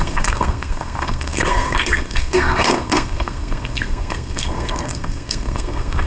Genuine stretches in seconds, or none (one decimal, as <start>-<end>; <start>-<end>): none